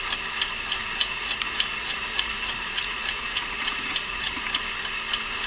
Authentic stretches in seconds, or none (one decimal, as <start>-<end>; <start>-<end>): 0.0-1.0; 4.3-5.5